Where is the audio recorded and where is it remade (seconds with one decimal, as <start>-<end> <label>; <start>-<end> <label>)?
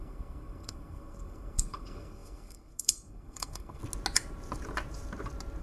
0.0-3.8 remade; 3.8-5.6 recorded